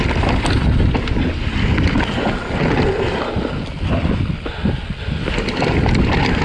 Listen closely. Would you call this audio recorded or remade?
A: recorded